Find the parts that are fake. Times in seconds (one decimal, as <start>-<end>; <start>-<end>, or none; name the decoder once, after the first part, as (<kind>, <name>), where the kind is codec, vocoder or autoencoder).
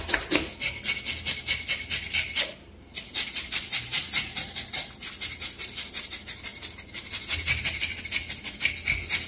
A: none